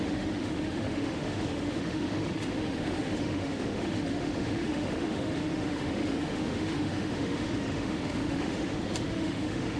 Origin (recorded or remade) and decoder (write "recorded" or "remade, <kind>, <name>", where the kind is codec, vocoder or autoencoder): remade, autoencoder, DAC-VAE